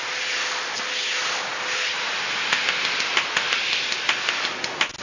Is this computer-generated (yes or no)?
no